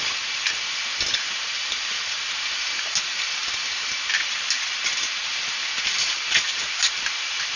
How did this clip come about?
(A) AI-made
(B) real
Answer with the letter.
B